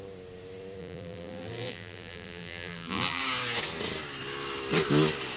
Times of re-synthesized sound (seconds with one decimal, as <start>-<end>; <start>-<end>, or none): 0.8-3.2